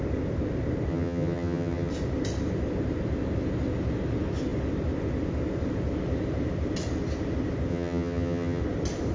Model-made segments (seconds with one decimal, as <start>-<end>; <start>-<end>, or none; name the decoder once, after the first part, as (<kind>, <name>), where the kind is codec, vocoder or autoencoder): 0.9-1.9 (vocoder, HiFi-GAN); 7.7-8.6